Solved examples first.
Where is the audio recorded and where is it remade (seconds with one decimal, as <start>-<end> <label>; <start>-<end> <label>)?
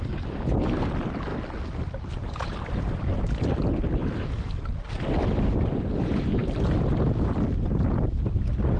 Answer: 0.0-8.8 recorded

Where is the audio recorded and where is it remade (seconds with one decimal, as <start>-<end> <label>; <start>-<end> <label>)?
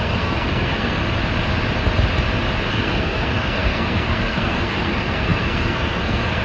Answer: 0.0-1.0 remade; 1.0-2.7 recorded; 2.7-6.4 remade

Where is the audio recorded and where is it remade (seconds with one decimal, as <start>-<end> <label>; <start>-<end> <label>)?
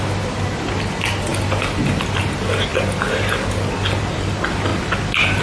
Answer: 0.0-5.4 recorded